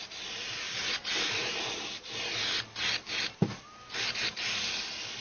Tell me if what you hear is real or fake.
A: real